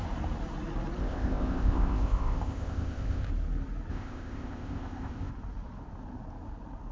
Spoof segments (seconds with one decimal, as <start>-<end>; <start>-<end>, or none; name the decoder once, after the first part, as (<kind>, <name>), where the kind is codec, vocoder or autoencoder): 1.0-3.3 (codec, ZipCodec); 3.9-5.3